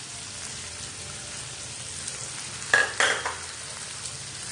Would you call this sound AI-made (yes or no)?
no